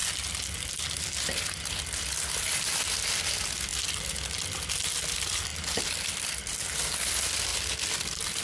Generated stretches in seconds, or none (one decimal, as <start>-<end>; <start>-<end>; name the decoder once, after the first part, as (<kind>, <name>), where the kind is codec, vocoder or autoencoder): 5.5-6.6 (vocoder, BigVGAN v2); 7.5-8.4